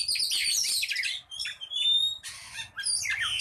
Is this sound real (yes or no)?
no